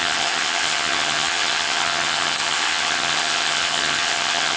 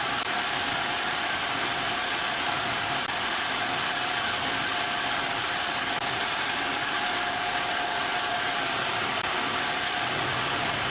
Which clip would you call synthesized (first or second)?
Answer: first